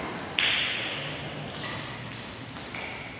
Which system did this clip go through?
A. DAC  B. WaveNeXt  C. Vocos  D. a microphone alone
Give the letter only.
D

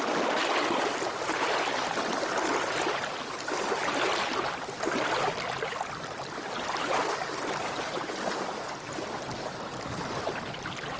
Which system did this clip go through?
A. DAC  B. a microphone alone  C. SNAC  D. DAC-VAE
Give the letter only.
B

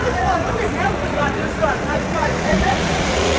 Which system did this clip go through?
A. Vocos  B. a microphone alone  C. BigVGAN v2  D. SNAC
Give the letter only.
A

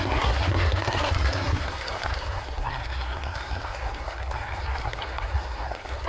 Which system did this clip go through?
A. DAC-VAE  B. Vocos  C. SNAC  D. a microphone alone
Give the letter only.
C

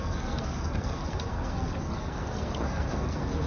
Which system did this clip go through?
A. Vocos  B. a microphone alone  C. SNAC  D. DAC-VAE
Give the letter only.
C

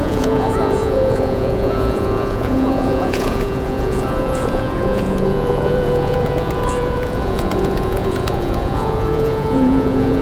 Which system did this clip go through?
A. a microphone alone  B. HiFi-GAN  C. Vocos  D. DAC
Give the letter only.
C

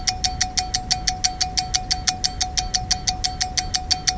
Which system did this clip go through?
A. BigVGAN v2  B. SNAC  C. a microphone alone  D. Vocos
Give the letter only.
C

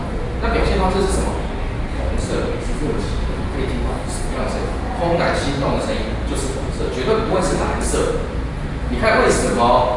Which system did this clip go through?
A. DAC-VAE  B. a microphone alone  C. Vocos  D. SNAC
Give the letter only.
B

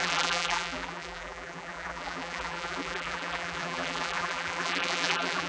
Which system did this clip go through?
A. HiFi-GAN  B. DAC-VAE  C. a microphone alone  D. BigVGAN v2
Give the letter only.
D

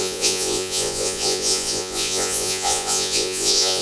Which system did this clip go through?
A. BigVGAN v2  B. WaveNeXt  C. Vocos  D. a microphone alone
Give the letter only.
C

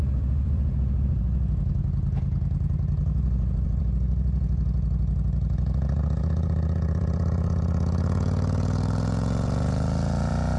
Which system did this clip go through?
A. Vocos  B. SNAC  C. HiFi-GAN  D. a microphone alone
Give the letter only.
A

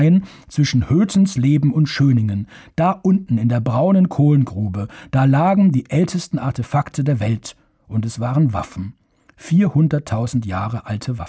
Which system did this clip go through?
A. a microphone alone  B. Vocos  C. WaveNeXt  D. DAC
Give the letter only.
A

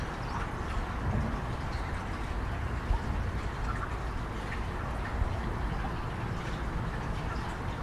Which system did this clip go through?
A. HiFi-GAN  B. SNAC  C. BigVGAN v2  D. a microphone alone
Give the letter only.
D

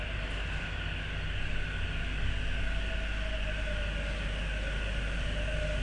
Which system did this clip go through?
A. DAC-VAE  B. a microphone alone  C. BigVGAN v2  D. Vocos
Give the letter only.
B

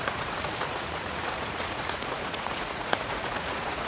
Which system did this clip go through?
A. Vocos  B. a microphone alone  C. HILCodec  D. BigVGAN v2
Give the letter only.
A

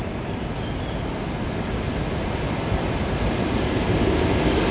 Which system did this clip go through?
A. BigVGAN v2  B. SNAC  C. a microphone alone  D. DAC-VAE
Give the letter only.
C